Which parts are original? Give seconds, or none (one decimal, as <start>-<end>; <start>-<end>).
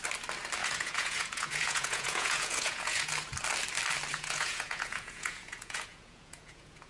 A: 0.0-0.6; 3.1-4.1